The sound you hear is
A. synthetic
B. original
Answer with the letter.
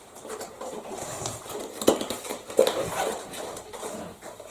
A